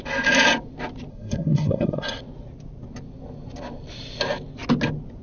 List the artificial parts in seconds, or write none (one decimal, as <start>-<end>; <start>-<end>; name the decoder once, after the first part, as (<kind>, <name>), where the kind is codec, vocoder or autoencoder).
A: 1.1-2.2 (codec, SNAC)